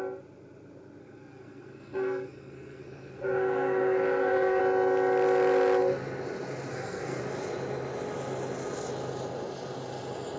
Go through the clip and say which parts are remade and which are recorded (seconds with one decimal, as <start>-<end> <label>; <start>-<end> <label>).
0.0-1.0 recorded; 1.0-4.6 remade; 4.6-6.7 recorded; 6.7-7.2 remade; 7.2-10.4 recorded